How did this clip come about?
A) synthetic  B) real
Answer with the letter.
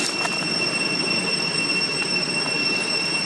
B